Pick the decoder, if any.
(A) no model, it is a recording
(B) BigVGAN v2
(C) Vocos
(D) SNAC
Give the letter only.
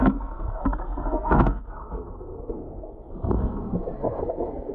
D